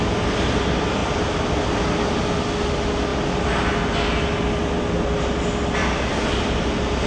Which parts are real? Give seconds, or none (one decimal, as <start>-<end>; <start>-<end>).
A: 0.0-7.1